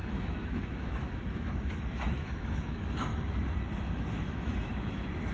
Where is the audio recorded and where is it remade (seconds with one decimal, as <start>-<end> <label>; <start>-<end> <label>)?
0.0-3.1 remade; 3.1-3.8 recorded; 3.8-5.3 remade